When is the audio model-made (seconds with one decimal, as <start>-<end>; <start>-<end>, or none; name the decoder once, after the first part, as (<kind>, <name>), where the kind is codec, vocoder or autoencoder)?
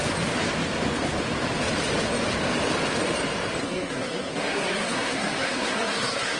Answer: 3.6-6.4 (codec, SNAC)